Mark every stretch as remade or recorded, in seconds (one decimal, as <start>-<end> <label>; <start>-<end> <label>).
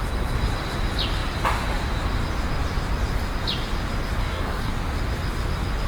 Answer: 0.0-4.2 recorded; 4.2-4.7 remade; 4.7-5.9 recorded